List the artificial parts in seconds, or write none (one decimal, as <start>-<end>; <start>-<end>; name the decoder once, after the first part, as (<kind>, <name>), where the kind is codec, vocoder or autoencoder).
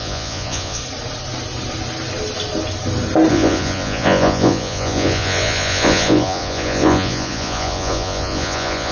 0.0-0.8 (vocoder, Vocos); 3.3-8.9